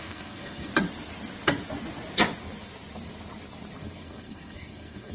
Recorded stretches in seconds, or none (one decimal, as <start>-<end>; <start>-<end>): 0.7-3.8